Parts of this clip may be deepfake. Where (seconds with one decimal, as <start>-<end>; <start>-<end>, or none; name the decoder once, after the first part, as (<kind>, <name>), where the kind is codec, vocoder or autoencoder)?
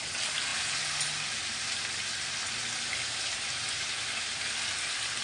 none